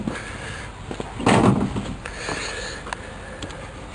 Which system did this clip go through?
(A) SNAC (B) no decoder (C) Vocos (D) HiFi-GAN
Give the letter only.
B